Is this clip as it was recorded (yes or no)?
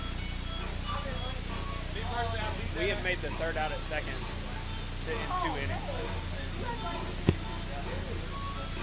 yes